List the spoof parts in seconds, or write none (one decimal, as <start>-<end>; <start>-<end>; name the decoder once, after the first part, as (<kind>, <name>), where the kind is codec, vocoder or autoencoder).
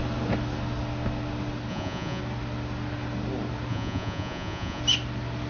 1.7-2.2 (vocoder, Vocos); 3.7-4.8